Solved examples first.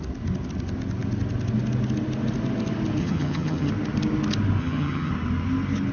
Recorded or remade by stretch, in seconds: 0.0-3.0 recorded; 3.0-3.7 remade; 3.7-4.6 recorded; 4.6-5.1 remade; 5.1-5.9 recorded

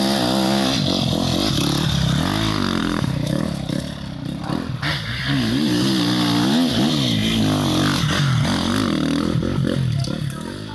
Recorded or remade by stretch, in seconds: 0.0-2.8 recorded; 2.8-3.4 remade; 3.4-10.7 recorded

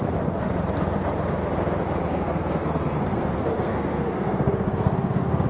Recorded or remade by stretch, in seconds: 0.0-2.1 recorded; 2.1-5.5 remade

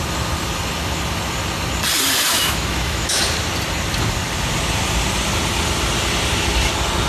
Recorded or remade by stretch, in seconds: 0.0-2.3 recorded; 2.3-3.2 remade; 3.2-7.1 recorded

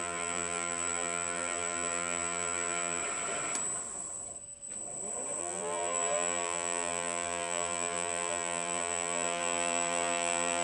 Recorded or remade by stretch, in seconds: 0.0-3.0 remade; 3.0-5.4 recorded; 5.4-10.6 remade

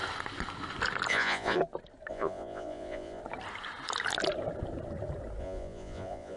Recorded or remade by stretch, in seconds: 0.0-1.1 recorded; 1.1-1.6 remade; 1.6-2.1 recorded; 2.1-3.2 remade; 3.2-5.4 recorded; 5.4-6.4 remade